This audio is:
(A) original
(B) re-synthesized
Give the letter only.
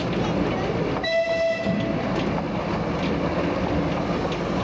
A